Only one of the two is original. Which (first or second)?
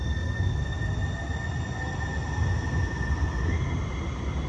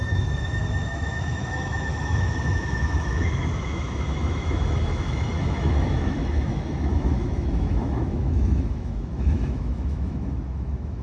first